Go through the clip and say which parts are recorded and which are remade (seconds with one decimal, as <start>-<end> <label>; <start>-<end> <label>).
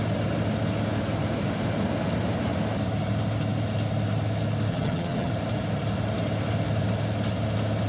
0.0-4.7 recorded; 4.7-5.3 remade; 5.3-7.9 recorded